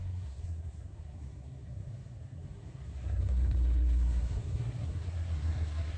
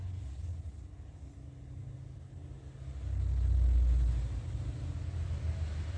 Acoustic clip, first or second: second